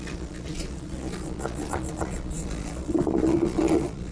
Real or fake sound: fake